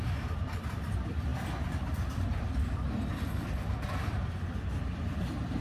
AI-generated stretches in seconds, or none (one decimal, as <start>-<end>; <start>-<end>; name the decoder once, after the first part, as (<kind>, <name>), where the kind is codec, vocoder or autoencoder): 0.0-5.6 (vocoder, BigVGAN v2)